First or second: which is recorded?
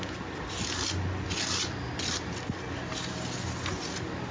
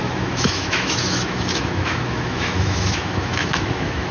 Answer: first